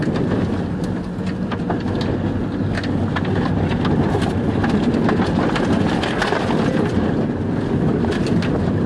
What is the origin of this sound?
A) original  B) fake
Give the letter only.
A